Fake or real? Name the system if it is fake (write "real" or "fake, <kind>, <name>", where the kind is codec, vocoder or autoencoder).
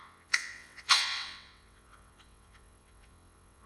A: fake, vocoder, WaveNeXt